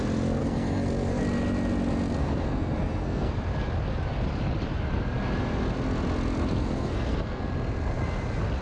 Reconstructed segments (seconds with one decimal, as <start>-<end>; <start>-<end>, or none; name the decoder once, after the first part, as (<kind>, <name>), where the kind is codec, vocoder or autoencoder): 0.4-1.2 (codec, SNAC); 2.2-3.3; 6.6-7.4